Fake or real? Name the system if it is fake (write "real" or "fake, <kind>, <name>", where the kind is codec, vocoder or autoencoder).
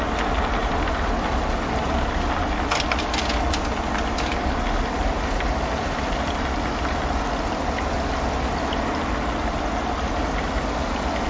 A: real